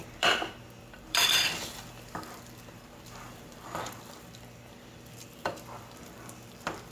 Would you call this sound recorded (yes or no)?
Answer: no